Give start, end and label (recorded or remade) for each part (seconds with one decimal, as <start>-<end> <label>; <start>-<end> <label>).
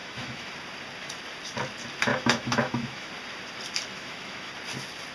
0.0-0.5 remade; 0.5-2.1 recorded; 2.1-3.1 remade; 3.1-3.9 recorded; 3.9-4.5 remade; 4.5-5.1 recorded